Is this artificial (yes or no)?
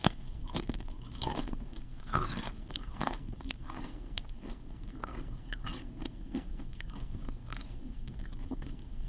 yes